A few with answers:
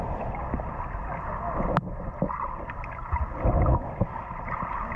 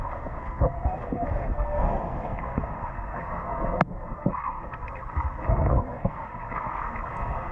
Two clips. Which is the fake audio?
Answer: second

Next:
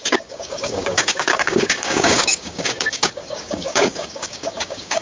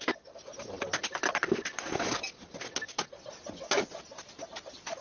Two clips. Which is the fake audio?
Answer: first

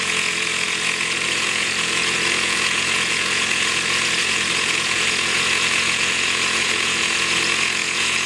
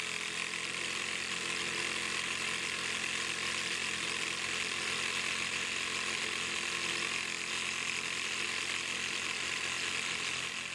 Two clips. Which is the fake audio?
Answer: first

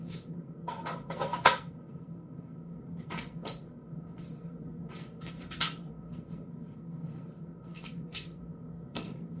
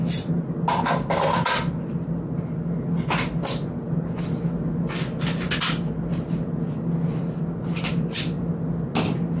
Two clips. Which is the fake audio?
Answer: first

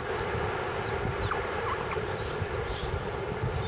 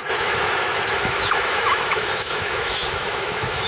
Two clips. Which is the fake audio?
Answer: second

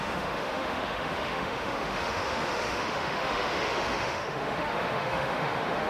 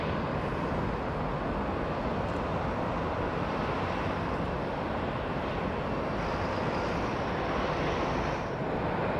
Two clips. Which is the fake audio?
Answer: first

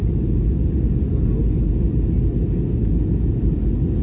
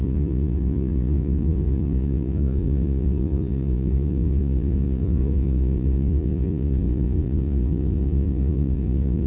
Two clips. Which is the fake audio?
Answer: second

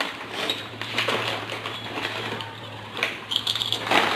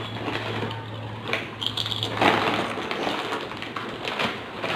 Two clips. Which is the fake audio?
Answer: first